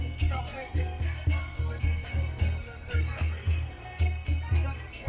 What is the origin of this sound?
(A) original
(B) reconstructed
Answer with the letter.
B